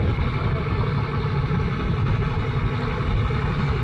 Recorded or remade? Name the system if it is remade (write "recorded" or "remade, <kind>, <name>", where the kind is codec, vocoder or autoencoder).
recorded